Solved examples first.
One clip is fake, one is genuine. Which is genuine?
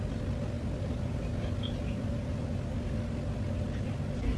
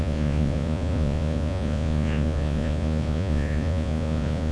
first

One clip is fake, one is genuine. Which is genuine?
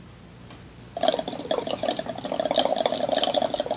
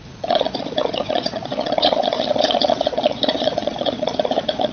first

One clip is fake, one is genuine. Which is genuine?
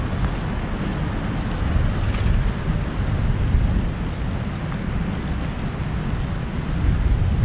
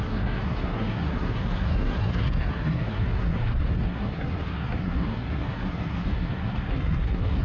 first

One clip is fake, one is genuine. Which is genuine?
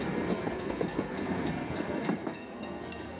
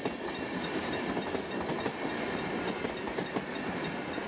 second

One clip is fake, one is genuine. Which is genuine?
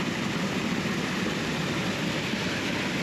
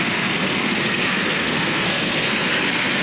first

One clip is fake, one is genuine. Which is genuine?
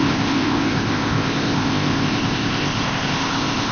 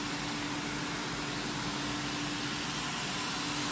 second